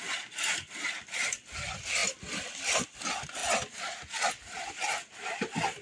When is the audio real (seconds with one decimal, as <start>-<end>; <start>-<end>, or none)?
0.0-5.8